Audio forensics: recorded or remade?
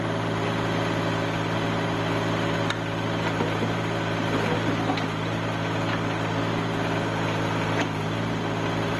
recorded